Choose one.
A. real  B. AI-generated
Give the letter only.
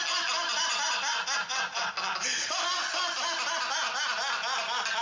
A